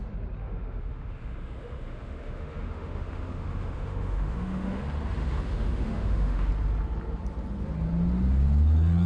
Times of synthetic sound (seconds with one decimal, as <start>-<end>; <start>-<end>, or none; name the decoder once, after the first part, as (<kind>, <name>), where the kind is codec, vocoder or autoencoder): 0.4-4.8 (autoencoder, DAC-VAE); 5.2-6.5